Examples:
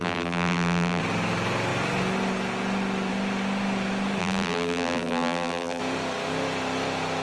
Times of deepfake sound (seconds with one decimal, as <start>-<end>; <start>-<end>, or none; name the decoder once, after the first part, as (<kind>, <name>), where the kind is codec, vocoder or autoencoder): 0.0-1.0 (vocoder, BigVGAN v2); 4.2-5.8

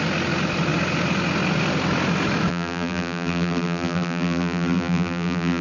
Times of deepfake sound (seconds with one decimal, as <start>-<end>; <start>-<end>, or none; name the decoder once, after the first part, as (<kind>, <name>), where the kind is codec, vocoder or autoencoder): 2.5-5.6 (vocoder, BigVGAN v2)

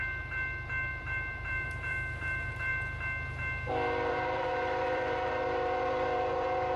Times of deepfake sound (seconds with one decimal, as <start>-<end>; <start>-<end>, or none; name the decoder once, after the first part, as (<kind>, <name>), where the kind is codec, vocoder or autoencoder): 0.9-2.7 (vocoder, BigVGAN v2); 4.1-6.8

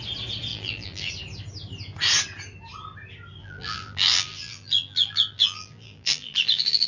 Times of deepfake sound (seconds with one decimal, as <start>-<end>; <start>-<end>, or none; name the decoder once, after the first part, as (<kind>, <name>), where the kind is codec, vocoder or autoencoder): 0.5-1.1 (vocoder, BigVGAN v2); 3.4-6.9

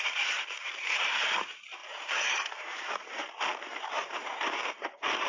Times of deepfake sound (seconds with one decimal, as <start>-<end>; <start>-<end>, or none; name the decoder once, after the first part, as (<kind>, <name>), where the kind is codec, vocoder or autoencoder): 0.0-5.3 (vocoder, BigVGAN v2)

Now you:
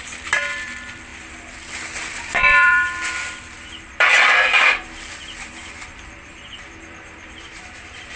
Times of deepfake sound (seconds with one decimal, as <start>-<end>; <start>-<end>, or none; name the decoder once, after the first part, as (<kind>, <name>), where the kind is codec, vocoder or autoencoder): 0.0-8.2 (vocoder, BigVGAN v2)